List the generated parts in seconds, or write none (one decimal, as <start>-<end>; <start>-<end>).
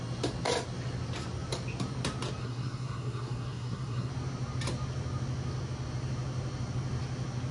2.4-4.1